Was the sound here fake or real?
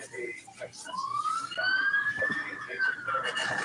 real